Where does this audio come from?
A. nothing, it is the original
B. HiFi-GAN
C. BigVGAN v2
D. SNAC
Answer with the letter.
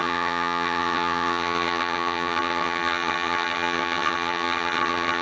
B